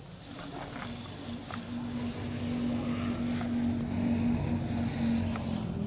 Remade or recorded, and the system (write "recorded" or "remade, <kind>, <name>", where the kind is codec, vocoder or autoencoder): recorded